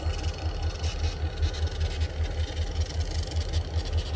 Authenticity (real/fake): real